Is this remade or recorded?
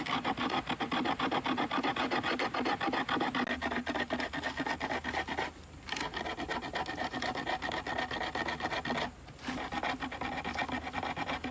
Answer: recorded